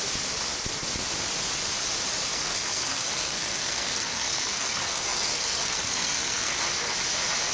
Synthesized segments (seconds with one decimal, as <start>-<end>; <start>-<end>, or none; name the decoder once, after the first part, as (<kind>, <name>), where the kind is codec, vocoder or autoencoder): 2.3-6.6 (codec, SNAC)